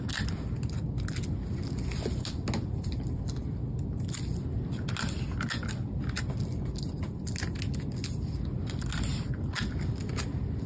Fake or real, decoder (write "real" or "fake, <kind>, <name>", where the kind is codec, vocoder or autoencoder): real